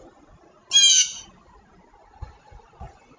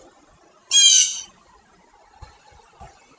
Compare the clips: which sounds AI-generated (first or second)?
second